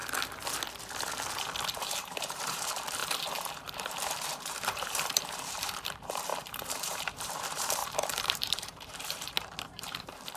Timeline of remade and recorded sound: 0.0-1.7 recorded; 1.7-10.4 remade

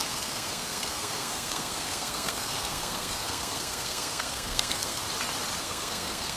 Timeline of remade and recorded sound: 0.0-5.0 remade; 5.0-5.6 recorded; 5.6-6.4 remade

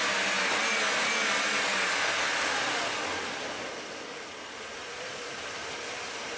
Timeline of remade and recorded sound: 0.0-4.8 recorded; 4.8-6.4 remade

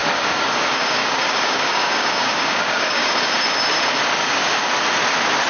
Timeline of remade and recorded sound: 0.0-3.3 remade; 3.3-4.2 recorded; 4.2-4.7 remade; 4.7-5.5 recorded

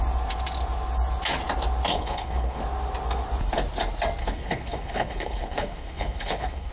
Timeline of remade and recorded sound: 0.0-1.9 recorded; 1.9-2.6 remade; 2.6-4.2 recorded; 4.2-6.7 remade

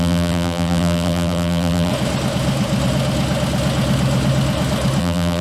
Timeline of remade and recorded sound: 0.0-1.9 remade; 1.9-5.0 recorded; 5.0-5.4 remade

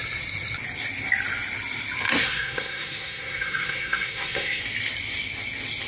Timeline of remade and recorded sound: 0.0-2.2 recorded; 2.2-4.6 remade; 4.6-5.9 recorded